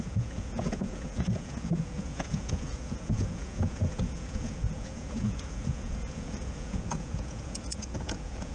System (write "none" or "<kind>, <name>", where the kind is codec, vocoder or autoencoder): vocoder, Vocos